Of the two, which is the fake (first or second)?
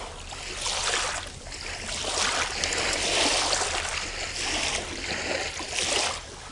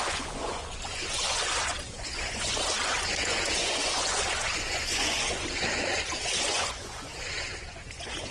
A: second